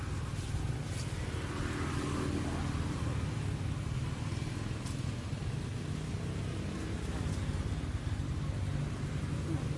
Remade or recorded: recorded